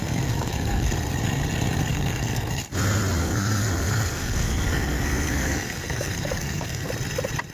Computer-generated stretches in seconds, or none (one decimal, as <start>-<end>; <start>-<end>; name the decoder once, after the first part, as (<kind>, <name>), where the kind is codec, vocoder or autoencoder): 0.0-0.9 (codec, SNAC); 1.9-2.6; 3.2-6.9